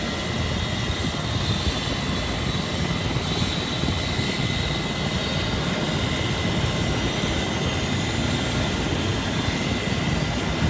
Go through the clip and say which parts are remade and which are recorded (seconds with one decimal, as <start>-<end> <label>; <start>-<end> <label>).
0.0-10.7 recorded